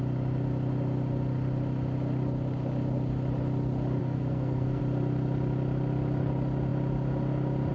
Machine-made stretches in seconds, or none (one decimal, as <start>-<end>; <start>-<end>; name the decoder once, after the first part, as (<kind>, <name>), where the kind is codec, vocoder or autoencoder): 4.0-4.8 (codec, SNAC)